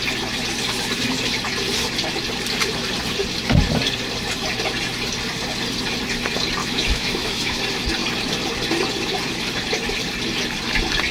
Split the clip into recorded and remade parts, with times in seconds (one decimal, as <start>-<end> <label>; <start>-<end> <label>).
0.0-6.6 recorded; 6.6-7.6 remade; 7.6-11.1 recorded